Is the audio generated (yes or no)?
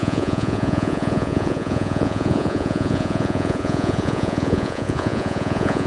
yes